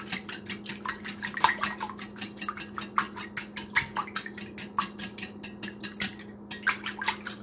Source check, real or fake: real